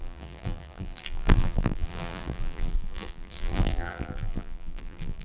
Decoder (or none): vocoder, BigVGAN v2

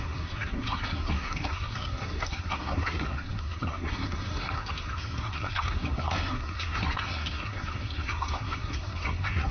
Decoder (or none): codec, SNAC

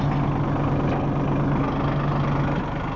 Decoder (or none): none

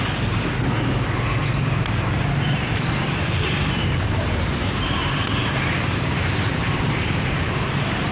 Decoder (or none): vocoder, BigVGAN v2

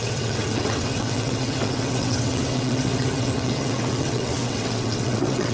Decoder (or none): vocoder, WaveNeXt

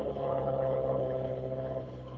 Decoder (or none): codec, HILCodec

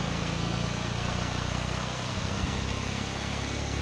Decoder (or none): codec, SNAC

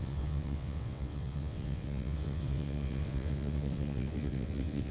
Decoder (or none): vocoder, WaveNeXt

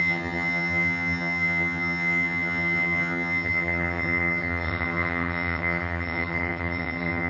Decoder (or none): vocoder, HiFi-GAN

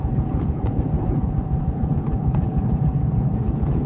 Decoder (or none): vocoder, Vocos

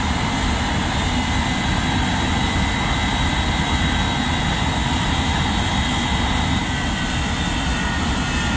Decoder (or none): none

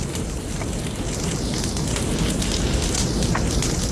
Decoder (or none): none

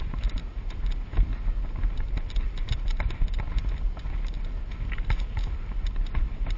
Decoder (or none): none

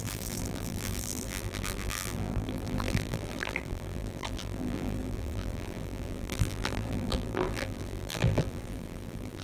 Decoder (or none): vocoder, BigVGAN v2